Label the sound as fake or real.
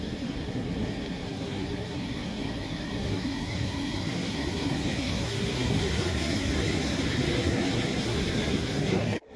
fake